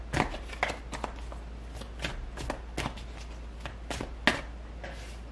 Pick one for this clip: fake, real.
real